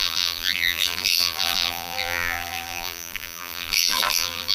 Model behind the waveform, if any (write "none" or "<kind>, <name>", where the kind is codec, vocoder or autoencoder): vocoder, BigVGAN v2